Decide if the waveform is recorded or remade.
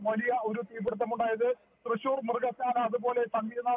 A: recorded